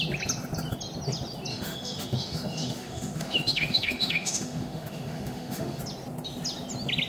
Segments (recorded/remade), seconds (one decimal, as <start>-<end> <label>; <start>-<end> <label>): 0.0-1.5 recorded; 1.5-5.8 remade; 5.8-7.1 recorded